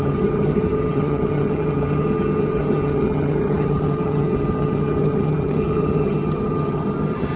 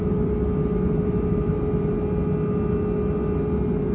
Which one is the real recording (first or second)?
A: second